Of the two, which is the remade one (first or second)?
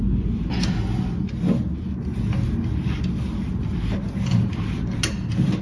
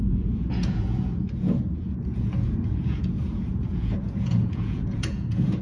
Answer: second